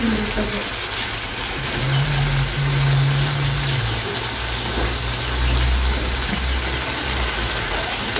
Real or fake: real